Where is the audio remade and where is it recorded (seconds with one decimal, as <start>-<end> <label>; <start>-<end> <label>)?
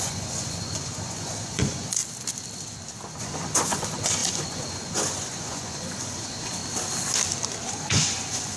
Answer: 0.0-2.0 remade; 2.0-3.2 recorded; 3.2-6.6 remade; 6.6-7.7 recorded; 7.7-8.6 remade